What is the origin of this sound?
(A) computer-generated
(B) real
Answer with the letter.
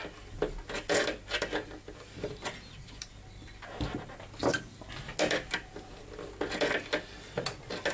B